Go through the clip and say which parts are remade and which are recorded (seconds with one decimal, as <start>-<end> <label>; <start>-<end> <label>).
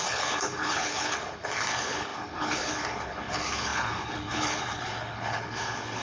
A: 0.0-6.0 remade